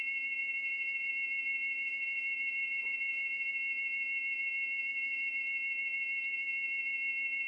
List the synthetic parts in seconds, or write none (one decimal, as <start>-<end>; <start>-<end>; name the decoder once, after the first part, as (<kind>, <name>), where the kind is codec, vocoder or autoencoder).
0.4-1.1 (autoencoder, DAC-VAE); 1.5-3.5; 4.9-5.4